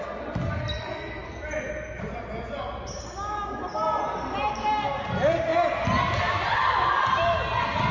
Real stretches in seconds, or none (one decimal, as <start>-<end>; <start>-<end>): 0.0-7.9